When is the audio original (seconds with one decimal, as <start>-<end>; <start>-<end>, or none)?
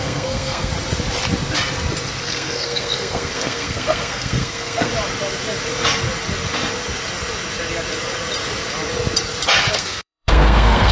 0.7-2.2; 4.9-9.7